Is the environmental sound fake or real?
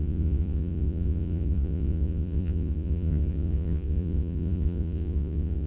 fake